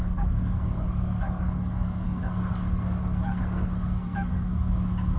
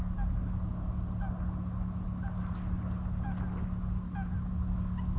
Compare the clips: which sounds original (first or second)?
second